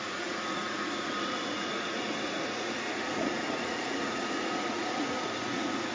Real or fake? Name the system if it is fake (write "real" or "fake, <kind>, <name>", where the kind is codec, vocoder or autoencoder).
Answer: fake, vocoder, Vocos